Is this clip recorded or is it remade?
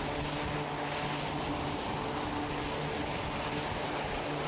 recorded